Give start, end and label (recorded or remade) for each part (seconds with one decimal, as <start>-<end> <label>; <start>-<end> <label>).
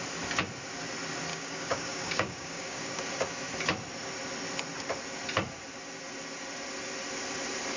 0.0-1.3 recorded; 1.3-3.0 remade; 3.0-7.8 recorded